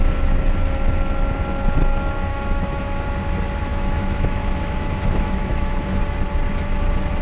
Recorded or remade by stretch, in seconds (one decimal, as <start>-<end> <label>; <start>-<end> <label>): 0.0-2.3 recorded; 2.3-2.8 remade; 2.8-3.7 recorded; 3.7-6.0 remade; 6.0-7.2 recorded